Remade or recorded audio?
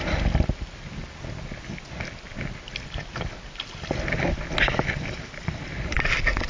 recorded